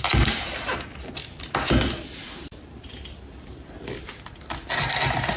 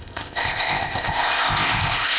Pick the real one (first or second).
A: first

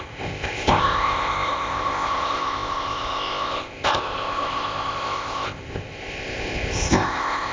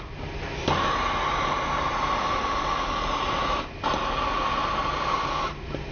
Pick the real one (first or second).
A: second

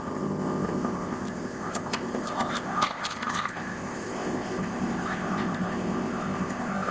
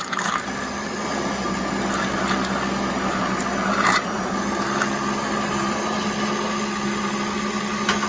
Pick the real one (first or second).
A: second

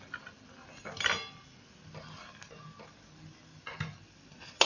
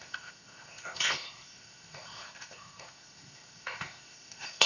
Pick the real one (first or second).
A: first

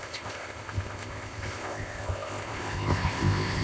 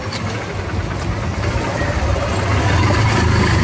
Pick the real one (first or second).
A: second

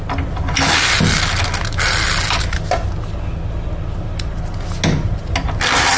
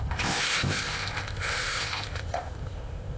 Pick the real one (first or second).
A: first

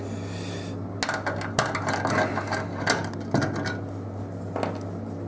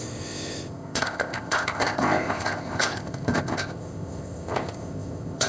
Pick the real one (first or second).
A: first